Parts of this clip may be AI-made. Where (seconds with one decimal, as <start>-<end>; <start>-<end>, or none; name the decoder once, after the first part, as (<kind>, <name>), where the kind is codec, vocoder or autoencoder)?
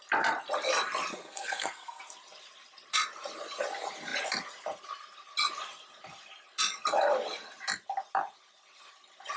1.1-2.0 (codec, SNAC)